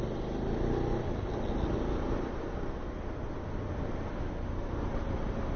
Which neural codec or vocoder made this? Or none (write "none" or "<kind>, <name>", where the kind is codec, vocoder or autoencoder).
none